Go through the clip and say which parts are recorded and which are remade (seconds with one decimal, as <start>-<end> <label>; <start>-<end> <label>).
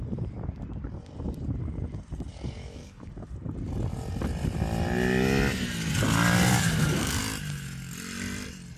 0.0-2.3 recorded; 2.3-3.1 remade; 3.1-6.5 recorded; 6.5-7.2 remade; 7.2-8.8 recorded